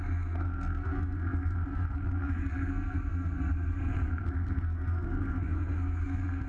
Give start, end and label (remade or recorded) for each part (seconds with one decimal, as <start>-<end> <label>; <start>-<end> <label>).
0.0-6.5 remade